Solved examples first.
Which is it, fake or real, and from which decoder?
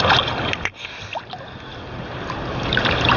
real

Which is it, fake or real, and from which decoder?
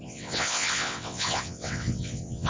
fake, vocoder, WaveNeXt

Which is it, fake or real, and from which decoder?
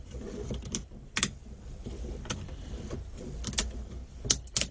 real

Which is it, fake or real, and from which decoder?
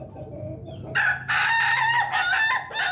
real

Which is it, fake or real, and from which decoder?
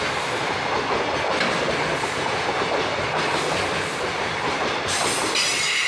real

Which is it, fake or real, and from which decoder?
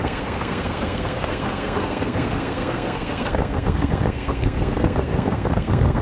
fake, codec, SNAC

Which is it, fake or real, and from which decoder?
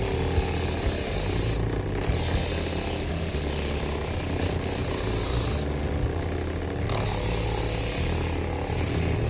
real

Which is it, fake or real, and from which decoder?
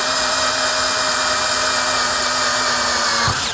real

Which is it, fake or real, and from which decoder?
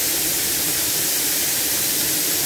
fake, vocoder, BigVGAN v2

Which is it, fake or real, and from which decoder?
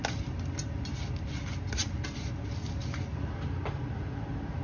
real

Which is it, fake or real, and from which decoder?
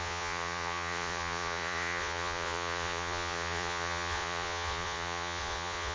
fake, vocoder, Vocos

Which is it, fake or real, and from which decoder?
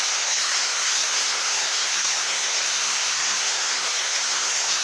fake, codec, SNAC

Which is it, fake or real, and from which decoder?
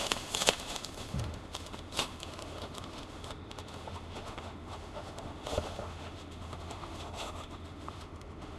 fake, autoencoder, DAC-VAE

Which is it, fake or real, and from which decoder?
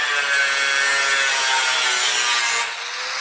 real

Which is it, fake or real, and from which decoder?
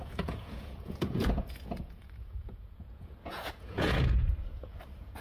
fake, vocoder, Vocos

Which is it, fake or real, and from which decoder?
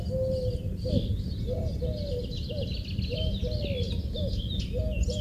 real